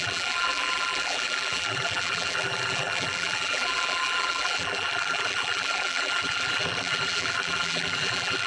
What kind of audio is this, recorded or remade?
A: remade